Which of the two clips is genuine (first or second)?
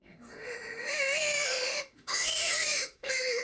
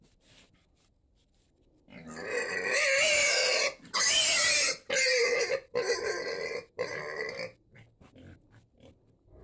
second